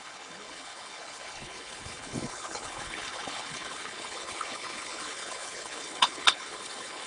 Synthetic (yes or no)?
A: yes